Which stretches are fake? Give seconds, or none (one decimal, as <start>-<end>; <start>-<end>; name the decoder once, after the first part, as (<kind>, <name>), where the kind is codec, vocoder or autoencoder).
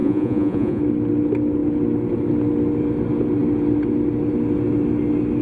0.0-0.8 (vocoder, Vocos)